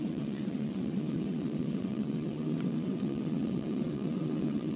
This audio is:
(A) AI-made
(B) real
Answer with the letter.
A